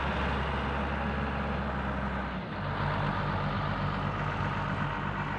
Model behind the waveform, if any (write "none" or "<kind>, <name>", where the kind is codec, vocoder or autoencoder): none